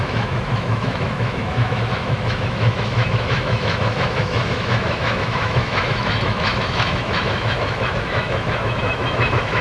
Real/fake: fake